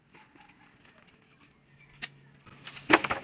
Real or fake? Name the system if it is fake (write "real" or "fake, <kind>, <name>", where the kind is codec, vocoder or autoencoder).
real